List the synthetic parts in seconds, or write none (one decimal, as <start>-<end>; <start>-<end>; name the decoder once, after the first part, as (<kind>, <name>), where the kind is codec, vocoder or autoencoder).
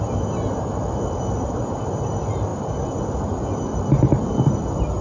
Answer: none